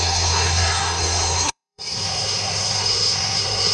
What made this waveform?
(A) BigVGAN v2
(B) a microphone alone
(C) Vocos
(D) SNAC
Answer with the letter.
D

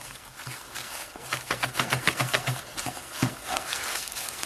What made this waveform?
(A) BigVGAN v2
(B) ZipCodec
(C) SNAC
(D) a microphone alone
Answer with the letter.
C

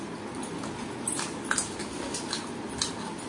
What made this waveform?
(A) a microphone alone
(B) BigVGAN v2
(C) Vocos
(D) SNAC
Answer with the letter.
A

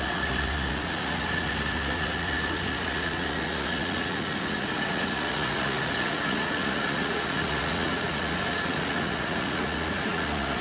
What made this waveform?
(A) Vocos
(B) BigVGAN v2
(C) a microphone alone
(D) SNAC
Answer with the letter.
A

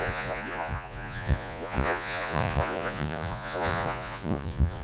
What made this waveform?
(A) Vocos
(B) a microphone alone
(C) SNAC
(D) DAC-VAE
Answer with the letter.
A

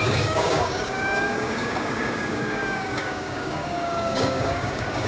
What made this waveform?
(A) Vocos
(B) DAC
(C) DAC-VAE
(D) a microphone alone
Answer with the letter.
B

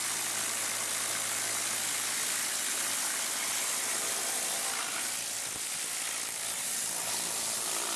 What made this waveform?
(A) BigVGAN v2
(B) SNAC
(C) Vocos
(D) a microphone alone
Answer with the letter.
A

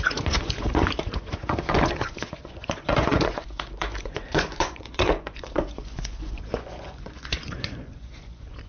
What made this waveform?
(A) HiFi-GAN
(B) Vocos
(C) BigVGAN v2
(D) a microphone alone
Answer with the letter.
B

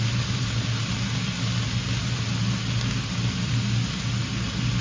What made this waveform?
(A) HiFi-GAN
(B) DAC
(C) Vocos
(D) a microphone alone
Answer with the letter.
D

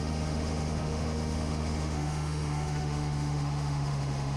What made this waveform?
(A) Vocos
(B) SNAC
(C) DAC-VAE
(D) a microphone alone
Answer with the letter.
C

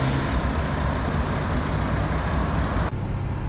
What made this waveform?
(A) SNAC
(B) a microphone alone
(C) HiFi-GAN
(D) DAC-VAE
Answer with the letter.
B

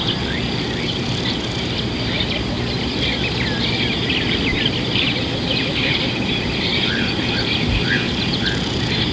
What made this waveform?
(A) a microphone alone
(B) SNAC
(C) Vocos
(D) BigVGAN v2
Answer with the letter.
A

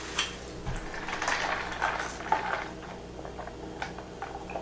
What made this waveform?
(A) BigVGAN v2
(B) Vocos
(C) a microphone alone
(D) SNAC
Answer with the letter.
C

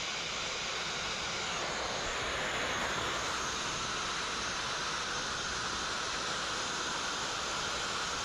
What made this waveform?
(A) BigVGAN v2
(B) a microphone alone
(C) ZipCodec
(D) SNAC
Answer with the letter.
B